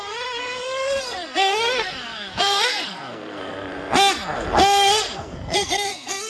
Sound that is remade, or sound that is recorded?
remade